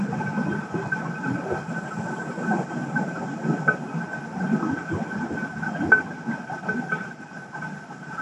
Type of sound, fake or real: real